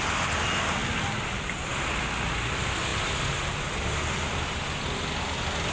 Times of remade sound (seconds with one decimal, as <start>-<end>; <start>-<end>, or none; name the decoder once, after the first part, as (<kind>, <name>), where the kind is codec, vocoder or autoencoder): none